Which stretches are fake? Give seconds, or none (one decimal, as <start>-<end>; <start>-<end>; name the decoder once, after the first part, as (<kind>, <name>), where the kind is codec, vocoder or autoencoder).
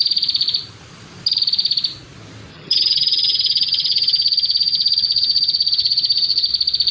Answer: 2.5-6.5 (vocoder, HiFi-GAN)